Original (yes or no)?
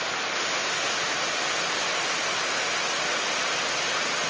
yes